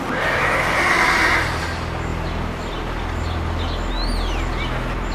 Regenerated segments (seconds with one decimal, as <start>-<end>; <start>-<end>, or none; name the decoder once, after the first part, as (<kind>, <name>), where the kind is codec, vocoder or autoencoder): none